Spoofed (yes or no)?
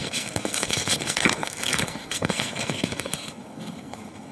yes